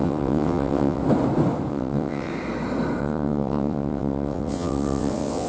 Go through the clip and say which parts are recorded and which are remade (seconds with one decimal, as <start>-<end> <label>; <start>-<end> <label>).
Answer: 0.0-1.0 remade; 1.0-1.7 recorded; 1.7-2.3 remade; 2.3-3.0 recorded; 3.0-5.5 remade